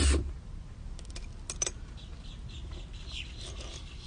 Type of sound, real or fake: real